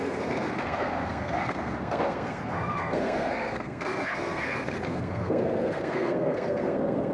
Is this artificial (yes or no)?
yes